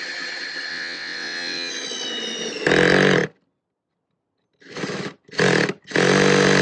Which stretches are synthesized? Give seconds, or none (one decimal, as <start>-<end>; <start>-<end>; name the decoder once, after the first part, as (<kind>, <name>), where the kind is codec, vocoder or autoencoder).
0.7-1.7 (vocoder, WaveNeXt)